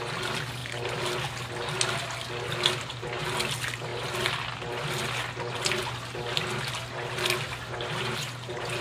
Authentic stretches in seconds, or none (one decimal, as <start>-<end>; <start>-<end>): 0.0-8.8